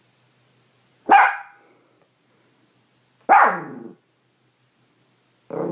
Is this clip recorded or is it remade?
recorded